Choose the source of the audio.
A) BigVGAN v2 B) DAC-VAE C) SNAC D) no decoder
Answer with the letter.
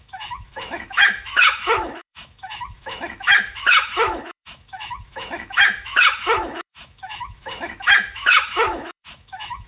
B